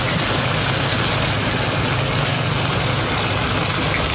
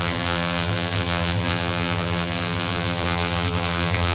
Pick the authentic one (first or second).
first